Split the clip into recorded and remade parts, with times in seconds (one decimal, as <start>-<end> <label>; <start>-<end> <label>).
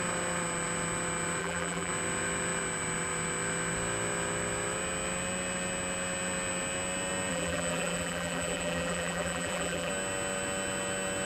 0.0-1.4 recorded; 1.4-1.9 remade; 1.9-7.3 recorded; 7.3-9.9 remade; 9.9-11.2 recorded